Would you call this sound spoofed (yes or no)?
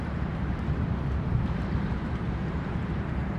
yes